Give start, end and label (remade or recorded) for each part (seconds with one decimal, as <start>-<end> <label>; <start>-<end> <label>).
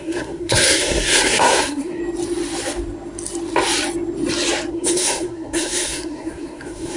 0.0-2.0 remade; 2.0-4.7 recorded; 4.7-7.0 remade